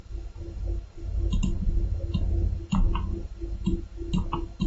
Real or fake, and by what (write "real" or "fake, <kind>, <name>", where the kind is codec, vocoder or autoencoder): real